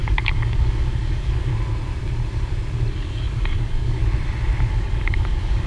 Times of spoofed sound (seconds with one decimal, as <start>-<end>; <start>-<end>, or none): 0.0-1.5; 2.9-4.0; 4.7-5.7